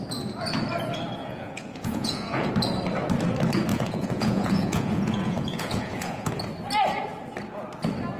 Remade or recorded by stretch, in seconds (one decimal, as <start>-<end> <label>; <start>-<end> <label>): 0.0-1.2 recorded; 1.2-2.5 remade; 2.5-3.7 recorded; 3.7-6.3 remade; 6.3-8.2 recorded